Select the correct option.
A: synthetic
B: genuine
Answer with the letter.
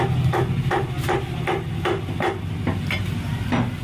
B